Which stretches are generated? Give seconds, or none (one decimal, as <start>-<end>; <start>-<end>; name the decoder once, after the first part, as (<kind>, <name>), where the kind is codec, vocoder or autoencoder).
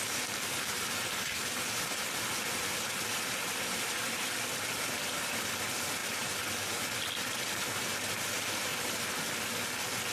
none